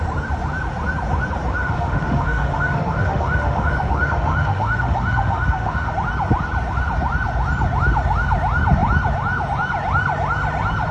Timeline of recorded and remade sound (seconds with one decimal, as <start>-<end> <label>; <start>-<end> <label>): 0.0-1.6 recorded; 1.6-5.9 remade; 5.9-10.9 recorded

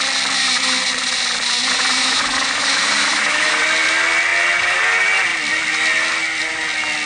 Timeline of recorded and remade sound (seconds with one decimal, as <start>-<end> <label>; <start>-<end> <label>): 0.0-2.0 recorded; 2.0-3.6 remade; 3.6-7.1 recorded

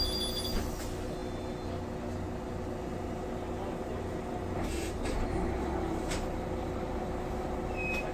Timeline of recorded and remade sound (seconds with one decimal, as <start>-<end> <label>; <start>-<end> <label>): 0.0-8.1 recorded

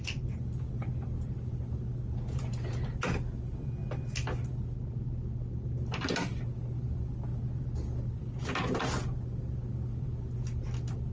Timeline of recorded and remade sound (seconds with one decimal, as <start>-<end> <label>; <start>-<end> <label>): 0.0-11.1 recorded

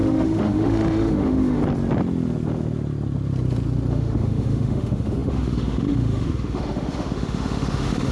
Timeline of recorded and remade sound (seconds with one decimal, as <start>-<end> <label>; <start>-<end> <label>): 0.0-1.6 remade; 1.6-3.9 recorded; 3.9-8.1 remade

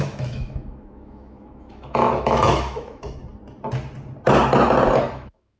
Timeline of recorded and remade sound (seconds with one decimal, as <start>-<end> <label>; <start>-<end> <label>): 0.0-3.2 remade; 3.2-5.1 recorded; 5.1-5.6 remade

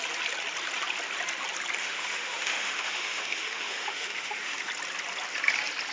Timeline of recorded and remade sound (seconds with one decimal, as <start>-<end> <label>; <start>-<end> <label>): 0.0-1.8 recorded; 1.8-4.7 remade; 4.7-5.9 recorded

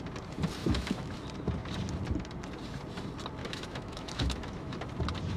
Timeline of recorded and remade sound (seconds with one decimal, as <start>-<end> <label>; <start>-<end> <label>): 0.0-0.6 recorded; 0.6-1.2 remade; 1.2-3.4 recorded; 3.4-4.8 remade; 4.8-5.4 recorded